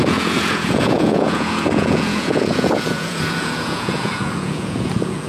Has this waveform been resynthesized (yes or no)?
yes